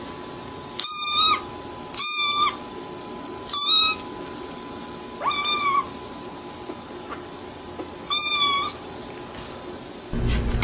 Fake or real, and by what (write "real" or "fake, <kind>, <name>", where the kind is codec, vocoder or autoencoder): real